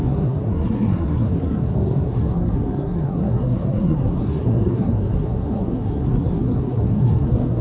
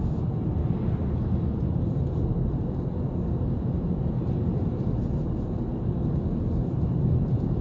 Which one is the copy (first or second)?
first